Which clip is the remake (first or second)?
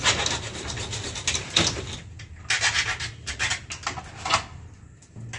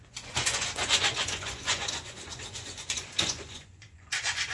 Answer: second